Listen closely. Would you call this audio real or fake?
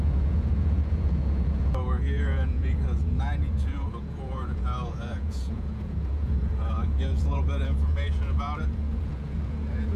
fake